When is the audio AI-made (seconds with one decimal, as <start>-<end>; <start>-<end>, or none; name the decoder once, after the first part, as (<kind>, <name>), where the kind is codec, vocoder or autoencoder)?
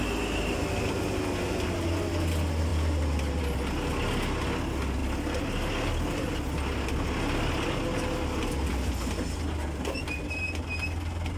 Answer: none